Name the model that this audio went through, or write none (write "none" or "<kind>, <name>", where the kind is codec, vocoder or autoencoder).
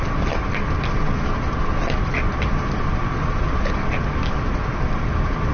none